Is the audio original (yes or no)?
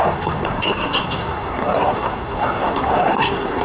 no